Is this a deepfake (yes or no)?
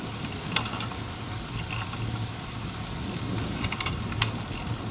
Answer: no